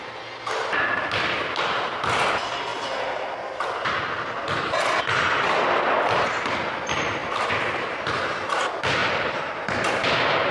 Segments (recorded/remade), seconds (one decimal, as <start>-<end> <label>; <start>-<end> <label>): 0.0-9.0 recorded; 9.0-9.6 remade; 9.6-10.5 recorded